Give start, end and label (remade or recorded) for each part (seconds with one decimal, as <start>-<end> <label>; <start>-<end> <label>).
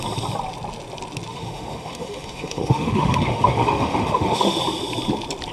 0.0-1.3 recorded; 1.3-4.6 remade; 4.6-5.5 recorded